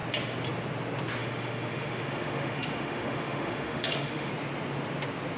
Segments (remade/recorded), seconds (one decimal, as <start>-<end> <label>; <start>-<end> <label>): 0.0-1.2 recorded; 1.2-4.3 remade; 4.3-5.4 recorded